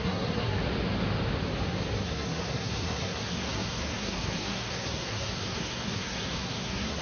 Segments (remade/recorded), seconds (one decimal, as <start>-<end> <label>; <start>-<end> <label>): 0.0-0.6 remade; 0.6-2.0 recorded; 2.0-7.0 remade